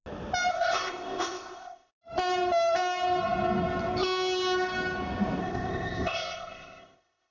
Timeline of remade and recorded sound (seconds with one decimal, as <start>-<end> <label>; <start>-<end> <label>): 0.0-0.5 recorded; 0.5-1.9 remade; 1.9-5.4 recorded; 5.4-7.3 remade